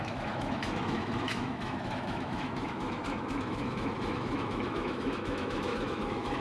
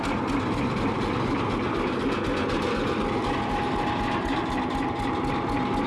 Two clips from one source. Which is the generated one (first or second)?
first